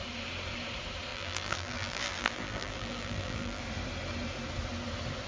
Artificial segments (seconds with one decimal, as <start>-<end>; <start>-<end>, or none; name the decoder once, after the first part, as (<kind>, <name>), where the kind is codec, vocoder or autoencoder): 1.1-3.6 (vocoder, BigVGAN v2)